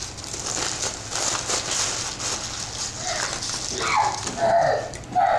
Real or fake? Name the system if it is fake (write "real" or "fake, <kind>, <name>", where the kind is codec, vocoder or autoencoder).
real